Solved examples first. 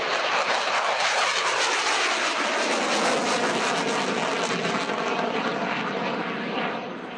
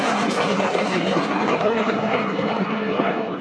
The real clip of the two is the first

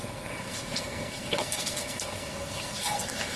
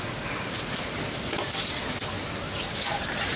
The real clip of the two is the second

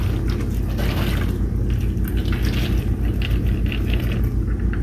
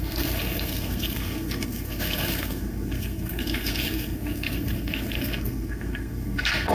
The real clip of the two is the first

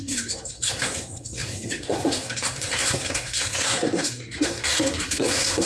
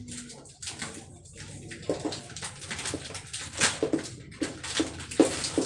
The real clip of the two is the second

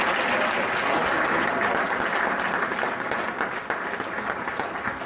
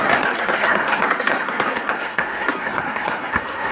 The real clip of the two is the first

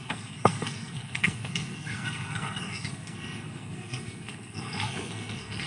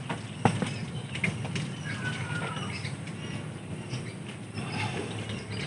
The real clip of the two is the second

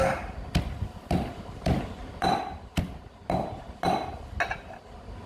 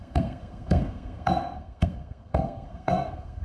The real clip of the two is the first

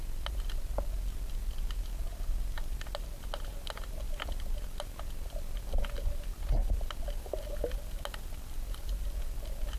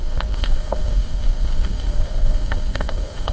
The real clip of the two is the first